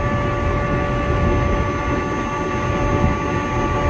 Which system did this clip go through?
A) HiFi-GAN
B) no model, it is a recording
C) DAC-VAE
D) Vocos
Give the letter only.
B